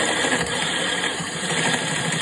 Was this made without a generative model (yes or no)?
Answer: no